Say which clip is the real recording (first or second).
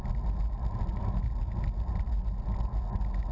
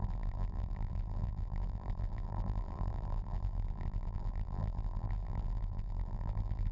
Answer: first